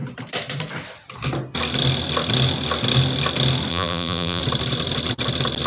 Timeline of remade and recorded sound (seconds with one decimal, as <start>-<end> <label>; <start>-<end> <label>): 0.0-3.7 recorded; 3.7-4.4 remade; 4.4-5.7 recorded

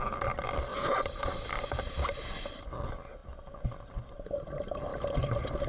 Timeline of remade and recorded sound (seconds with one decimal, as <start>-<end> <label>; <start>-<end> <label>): 0.0-0.7 recorded; 0.7-1.8 remade; 1.8-4.9 recorded; 4.9-5.7 remade

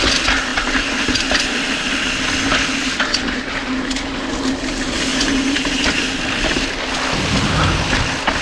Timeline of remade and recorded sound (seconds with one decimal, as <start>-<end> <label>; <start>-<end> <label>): 0.0-5.1 recorded; 5.1-5.9 remade; 5.9-8.4 recorded

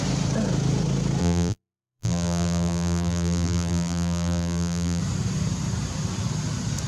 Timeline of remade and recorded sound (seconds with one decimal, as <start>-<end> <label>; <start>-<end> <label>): 0.0-1.2 recorded; 1.2-5.0 remade; 5.0-6.9 recorded

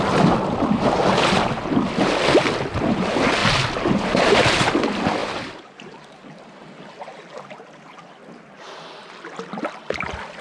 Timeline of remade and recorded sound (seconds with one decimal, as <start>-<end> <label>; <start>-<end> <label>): 0.0-5.2 recorded; 5.2-6.2 remade; 6.2-10.4 recorded

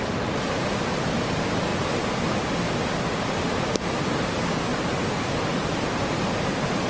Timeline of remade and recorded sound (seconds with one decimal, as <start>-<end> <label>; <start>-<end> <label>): 0.0-1.7 remade; 1.7-2.2 recorded; 2.2-6.9 remade

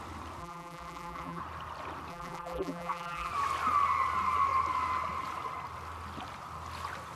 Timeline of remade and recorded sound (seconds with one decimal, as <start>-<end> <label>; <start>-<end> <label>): 0.0-0.4 recorded; 0.4-1.4 remade; 1.4-2.1 recorded; 2.1-3.3 remade; 3.3-7.2 recorded

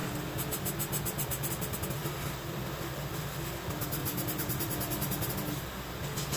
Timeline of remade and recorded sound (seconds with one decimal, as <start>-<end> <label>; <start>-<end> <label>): 0.0-2.0 recorded; 2.0-3.2 remade; 3.2-4.0 recorded; 4.0-5.3 remade; 5.3-6.4 recorded